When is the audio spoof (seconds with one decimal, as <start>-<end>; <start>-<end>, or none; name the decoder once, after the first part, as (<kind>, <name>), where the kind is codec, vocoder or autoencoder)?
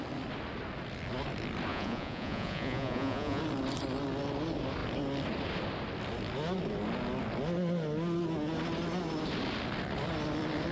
1.7-3.4 (vocoder, Vocos)